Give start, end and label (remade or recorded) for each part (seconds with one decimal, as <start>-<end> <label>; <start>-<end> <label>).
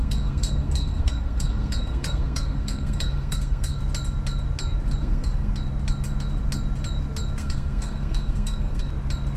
0.0-3.8 remade; 3.8-5.0 recorded; 5.0-5.5 remade; 5.5-7.4 recorded; 7.4-8.9 remade; 8.9-9.4 recorded